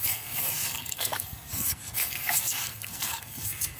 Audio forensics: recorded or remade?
remade